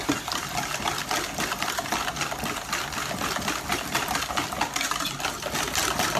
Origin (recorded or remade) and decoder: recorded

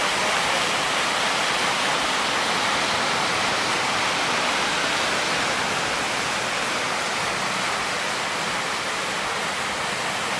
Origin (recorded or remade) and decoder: recorded